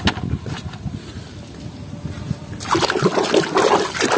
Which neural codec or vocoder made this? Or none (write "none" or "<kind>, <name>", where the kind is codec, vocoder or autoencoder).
none